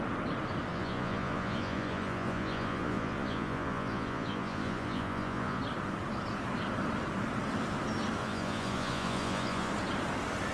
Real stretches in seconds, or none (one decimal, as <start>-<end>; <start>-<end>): 0.0-0.7; 5.6-8.2; 9.7-10.5